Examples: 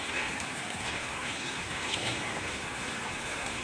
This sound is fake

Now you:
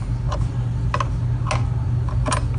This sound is real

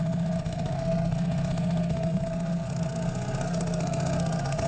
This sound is fake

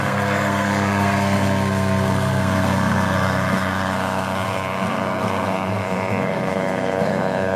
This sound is fake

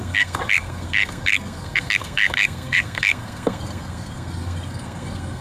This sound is fake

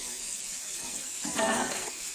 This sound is fake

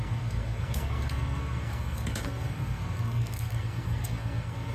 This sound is fake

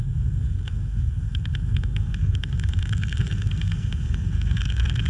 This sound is fake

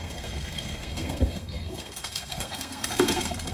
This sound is fake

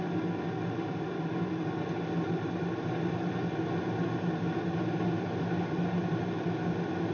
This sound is real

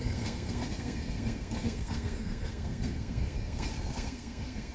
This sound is fake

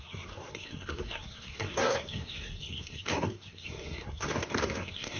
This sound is fake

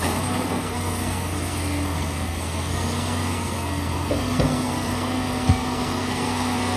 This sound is fake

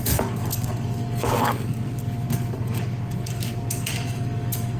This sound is fake